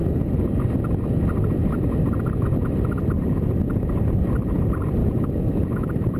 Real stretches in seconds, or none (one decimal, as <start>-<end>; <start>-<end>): 0.0-5.0

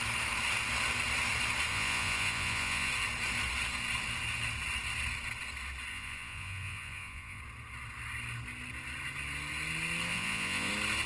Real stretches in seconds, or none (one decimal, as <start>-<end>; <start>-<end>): 0.0-1.7; 2.9-5.9; 7.4-10.1; 10.7-11.1

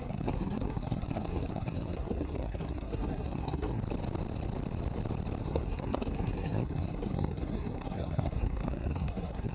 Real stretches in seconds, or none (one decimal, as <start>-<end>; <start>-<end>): 3.8-5.4

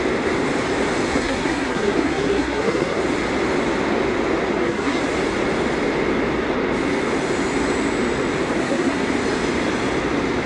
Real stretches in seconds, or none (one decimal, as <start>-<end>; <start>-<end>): 0.0-1.1; 3.0-4.5; 5.0-8.6; 9.1-10.5

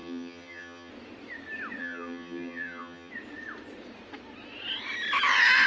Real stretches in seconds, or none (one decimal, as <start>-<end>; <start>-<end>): 0.9-1.8; 3.1-5.7

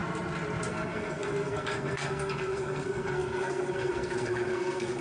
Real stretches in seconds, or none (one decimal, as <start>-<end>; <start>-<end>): 0.0-0.7

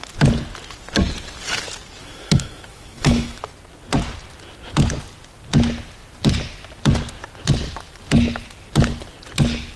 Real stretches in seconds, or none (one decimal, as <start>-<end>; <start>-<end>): 0.0-2.0; 3.4-9.8